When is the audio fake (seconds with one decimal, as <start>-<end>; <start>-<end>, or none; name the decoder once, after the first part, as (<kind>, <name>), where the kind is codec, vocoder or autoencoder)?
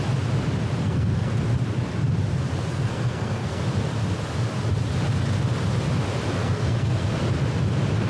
0.8-1.3 (codec, SNAC); 2.7-3.6; 6.4-7.2